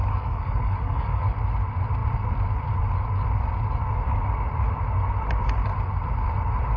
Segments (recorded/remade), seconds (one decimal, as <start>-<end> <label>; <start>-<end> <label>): 0.0-1.2 remade; 1.2-6.8 recorded